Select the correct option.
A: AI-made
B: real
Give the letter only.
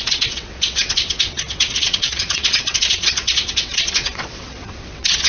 A